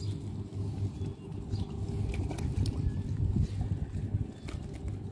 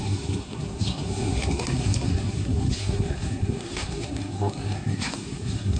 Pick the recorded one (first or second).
first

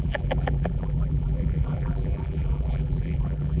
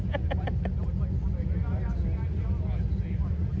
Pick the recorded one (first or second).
second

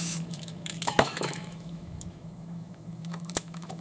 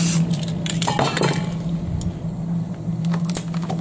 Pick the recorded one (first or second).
second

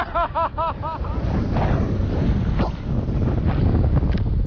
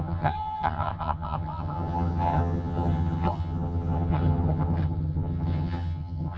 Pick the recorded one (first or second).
first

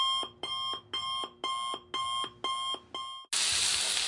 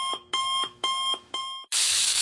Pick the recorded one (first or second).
first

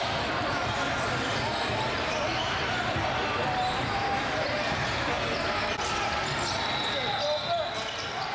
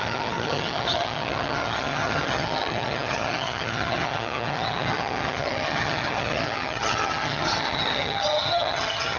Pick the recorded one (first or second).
first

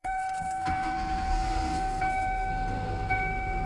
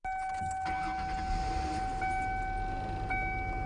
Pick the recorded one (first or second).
second